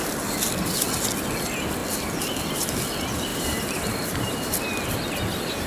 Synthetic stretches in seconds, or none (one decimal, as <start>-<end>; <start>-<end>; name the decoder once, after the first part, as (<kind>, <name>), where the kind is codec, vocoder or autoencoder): 3.3-4.1 (vocoder, BigVGAN v2)